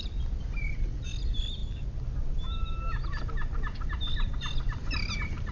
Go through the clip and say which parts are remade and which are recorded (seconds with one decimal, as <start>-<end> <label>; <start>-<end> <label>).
0.0-5.5 recorded